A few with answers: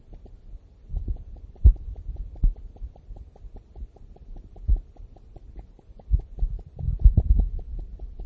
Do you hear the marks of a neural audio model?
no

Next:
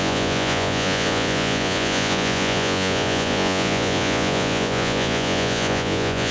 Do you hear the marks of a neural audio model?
yes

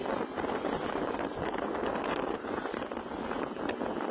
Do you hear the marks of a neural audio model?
yes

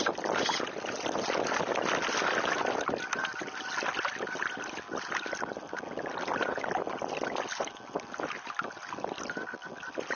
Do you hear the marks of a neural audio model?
no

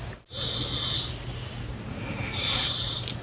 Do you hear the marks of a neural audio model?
no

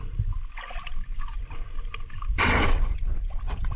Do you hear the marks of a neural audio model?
no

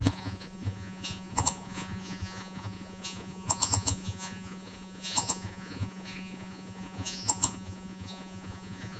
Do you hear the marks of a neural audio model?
yes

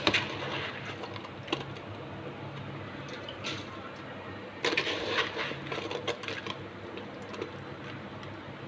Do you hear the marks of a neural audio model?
no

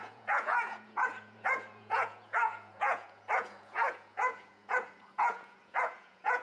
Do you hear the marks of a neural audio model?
yes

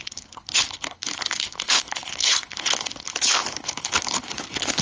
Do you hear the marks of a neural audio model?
yes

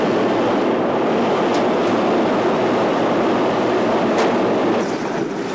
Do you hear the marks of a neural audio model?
no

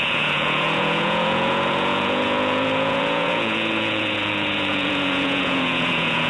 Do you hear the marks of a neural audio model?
yes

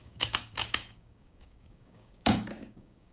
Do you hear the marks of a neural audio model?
yes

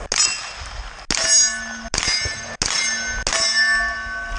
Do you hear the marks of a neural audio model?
no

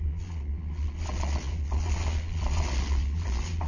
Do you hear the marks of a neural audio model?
yes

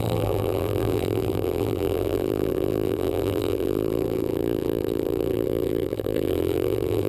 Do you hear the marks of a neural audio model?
yes